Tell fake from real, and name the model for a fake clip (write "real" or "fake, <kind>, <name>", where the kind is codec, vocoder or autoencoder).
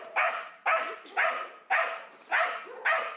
real